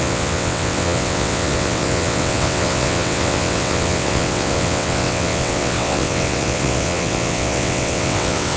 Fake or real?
fake